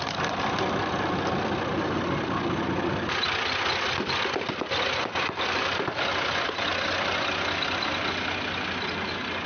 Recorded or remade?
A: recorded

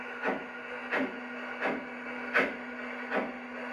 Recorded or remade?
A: recorded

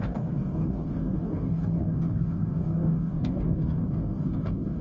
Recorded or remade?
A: remade